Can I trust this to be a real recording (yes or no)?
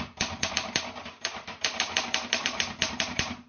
no